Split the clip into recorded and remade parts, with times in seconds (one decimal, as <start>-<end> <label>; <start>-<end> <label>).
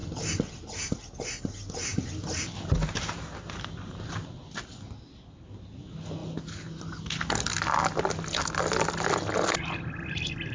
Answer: 0.0-10.5 recorded